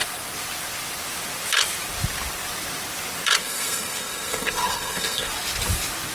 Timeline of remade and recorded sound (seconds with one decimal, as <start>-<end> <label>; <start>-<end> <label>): 0.0-3.4 recorded; 3.4-5.3 remade; 5.3-6.1 recorded